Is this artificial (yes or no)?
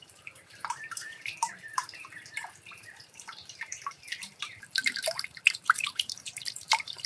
yes